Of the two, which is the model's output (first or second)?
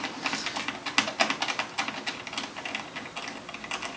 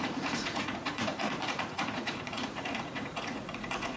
second